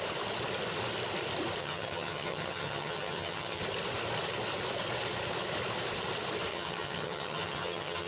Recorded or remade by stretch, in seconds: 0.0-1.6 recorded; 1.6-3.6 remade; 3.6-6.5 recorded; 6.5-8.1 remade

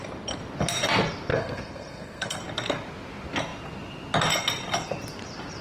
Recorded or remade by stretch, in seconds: 0.0-1.3 recorded; 1.3-2.4 remade; 2.4-5.6 recorded

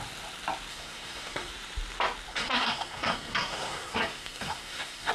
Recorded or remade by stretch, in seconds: 0.0-0.7 recorded; 0.7-1.5 remade; 1.5-2.3 recorded; 2.3-5.1 remade

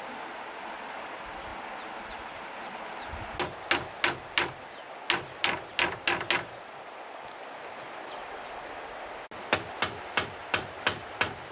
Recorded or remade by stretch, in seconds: 0.0-11.5 recorded

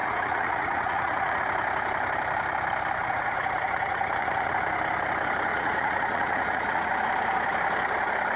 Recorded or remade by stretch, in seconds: 0.0-1.4 remade; 1.4-3.0 recorded; 3.0-4.5 remade; 4.5-5.5 recorded; 5.5-6.9 remade; 6.9-8.4 recorded

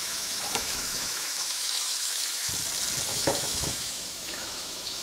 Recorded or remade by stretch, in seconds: 0.0-2.5 remade; 2.5-3.1 recorded; 3.1-5.0 remade